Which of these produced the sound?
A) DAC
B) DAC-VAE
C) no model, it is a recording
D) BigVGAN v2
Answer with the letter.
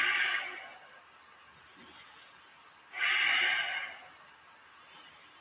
D